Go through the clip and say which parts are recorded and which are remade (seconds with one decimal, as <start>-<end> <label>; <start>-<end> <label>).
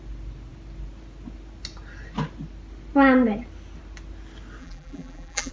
0.0-4.6 recorded; 4.6-5.5 remade